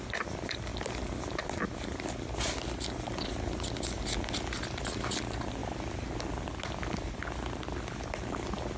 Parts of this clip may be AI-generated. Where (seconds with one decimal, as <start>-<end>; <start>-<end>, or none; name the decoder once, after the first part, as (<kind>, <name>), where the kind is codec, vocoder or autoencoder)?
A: none